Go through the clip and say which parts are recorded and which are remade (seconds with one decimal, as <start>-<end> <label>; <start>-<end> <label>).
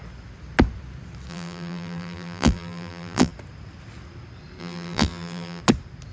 0.0-1.3 recorded; 1.3-3.3 remade; 3.3-4.6 recorded; 4.6-5.6 remade; 5.6-6.1 recorded